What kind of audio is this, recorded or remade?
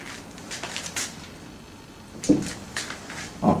recorded